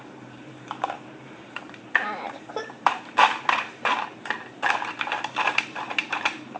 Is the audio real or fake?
fake